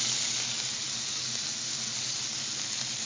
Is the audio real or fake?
real